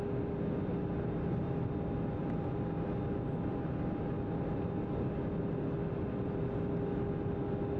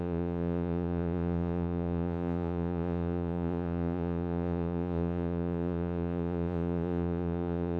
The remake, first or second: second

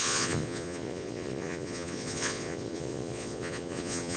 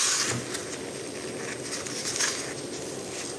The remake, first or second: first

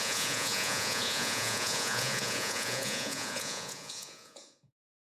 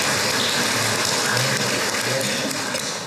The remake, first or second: first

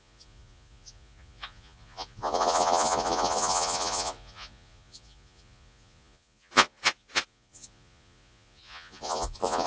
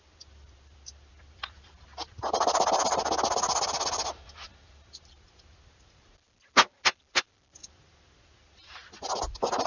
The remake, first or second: first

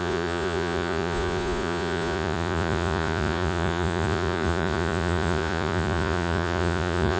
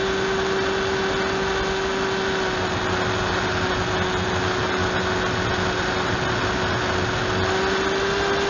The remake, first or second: first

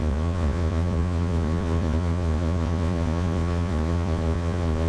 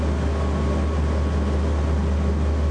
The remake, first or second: first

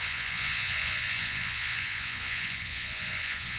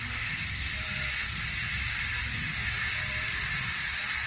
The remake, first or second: first